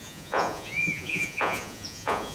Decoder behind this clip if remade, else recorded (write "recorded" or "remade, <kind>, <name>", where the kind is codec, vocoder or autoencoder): remade, vocoder, Vocos